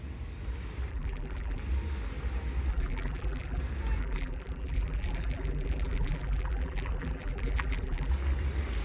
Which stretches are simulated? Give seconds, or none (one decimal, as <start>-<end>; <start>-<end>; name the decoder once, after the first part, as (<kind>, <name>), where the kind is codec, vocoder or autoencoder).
0.9-1.6 (vocoder, BigVGAN v2); 2.7-3.6; 4.0-8.1